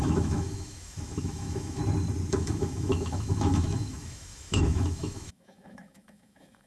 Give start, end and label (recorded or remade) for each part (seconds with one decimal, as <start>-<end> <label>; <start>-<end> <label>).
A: 0.0-1.8 remade; 1.8-2.3 recorded; 2.3-6.7 remade